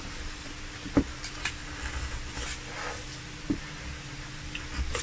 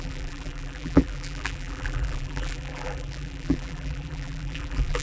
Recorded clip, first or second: first